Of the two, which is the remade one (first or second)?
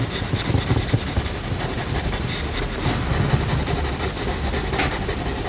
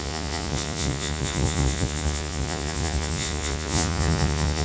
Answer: second